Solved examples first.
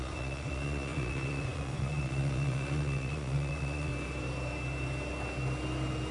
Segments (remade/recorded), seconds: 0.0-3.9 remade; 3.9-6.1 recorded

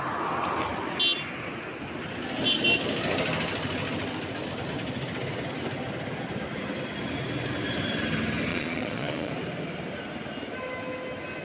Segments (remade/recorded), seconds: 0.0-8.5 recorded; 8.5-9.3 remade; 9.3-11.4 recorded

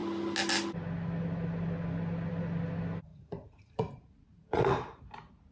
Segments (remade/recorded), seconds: 0.0-3.1 recorded; 3.1-5.0 remade; 5.0-5.5 recorded